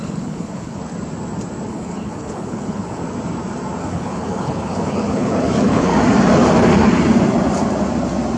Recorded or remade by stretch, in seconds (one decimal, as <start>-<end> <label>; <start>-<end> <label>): 0.0-0.8 remade; 0.8-1.7 recorded; 1.7-3.0 remade; 3.0-3.8 recorded; 3.8-5.9 remade; 5.9-8.4 recorded